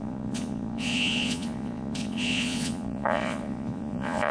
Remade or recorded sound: remade